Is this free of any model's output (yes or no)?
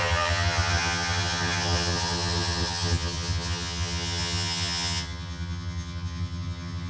no